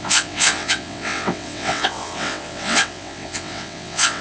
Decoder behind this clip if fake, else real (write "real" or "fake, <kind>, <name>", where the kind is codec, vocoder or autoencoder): fake, vocoder, WaveNeXt